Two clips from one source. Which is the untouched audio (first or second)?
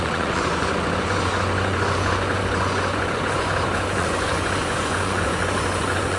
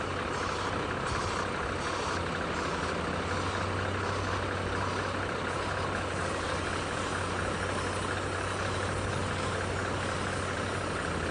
second